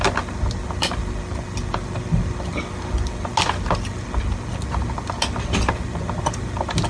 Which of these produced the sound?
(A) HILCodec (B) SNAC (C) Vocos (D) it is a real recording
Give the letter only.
D